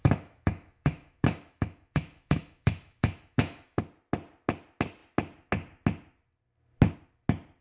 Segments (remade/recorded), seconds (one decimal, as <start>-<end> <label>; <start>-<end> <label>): 0.0-3.8 remade; 3.8-7.6 recorded